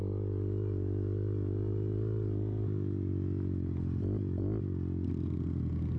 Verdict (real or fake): real